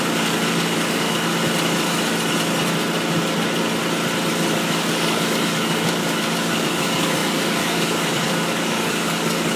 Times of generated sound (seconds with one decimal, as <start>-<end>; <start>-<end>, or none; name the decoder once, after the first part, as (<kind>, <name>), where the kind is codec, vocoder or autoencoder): 0.0-1.3 (codec, DAC); 4.5-9.6